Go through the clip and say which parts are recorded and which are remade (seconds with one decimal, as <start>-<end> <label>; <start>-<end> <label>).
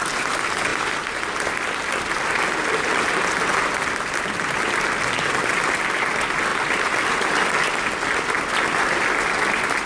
0.0-9.9 recorded